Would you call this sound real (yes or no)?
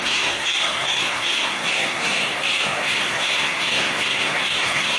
no